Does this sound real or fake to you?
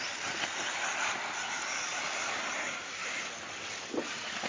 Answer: real